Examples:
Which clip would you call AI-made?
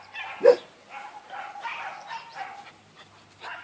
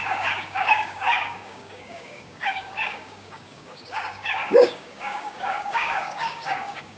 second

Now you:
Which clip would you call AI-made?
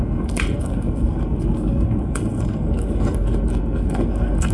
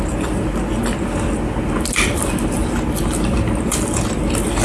first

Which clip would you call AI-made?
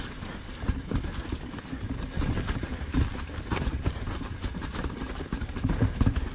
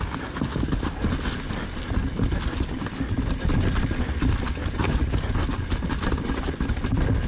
first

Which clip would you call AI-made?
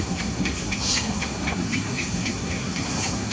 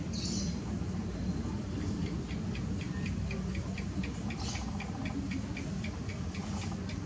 first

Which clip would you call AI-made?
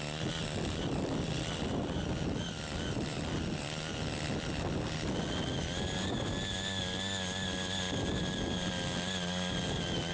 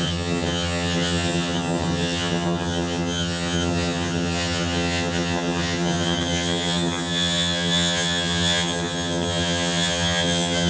second